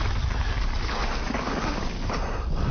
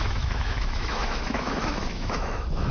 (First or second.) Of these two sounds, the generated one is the second